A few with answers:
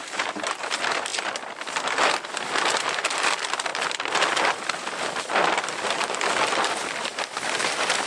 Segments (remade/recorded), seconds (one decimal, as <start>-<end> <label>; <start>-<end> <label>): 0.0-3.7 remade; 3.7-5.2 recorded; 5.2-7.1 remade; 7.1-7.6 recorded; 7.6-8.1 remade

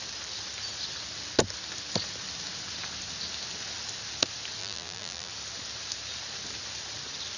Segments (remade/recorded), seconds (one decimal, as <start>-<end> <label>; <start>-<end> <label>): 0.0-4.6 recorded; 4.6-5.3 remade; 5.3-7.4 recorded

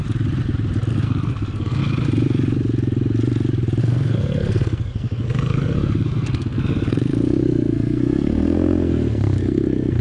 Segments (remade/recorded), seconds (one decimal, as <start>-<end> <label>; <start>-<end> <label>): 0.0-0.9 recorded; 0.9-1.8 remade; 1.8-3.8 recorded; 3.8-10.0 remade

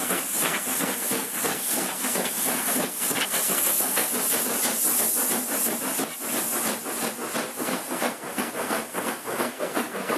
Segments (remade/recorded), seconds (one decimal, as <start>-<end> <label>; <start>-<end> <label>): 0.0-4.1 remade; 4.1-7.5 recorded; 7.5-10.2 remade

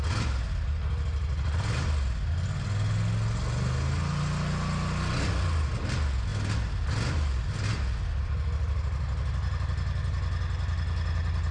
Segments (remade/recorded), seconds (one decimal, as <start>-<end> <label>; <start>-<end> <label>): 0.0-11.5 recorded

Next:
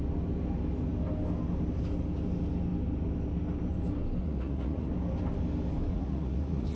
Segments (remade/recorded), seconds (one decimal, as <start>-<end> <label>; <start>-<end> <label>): 0.0-4.2 recorded; 4.2-4.9 remade; 4.9-5.9 recorded; 5.9-6.8 remade

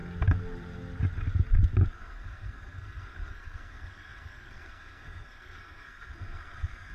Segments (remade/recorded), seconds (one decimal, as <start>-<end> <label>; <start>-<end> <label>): 0.0-1.9 recorded; 1.9-6.9 remade

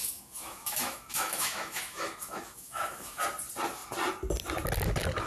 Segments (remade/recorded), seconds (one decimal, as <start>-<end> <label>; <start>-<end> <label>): 0.0-3.2 remade; 3.2-5.3 recorded